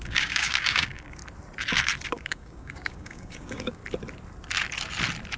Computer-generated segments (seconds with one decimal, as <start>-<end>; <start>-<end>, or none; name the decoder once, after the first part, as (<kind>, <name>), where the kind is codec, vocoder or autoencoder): 0.0-1.2 (codec, DAC); 2.1-3.8